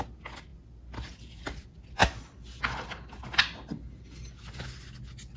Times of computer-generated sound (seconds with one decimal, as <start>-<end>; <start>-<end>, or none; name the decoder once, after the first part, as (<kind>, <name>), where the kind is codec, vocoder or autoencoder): none